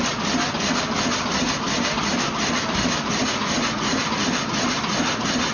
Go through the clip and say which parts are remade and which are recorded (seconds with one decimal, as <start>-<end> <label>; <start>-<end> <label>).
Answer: 0.0-3.2 recorded; 3.2-4.0 remade; 4.0-5.5 recorded